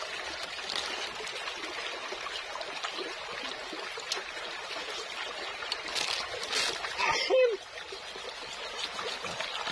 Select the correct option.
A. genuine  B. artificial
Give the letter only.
A